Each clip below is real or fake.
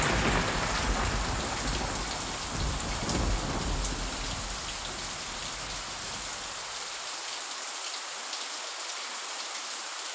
real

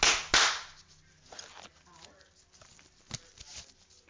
real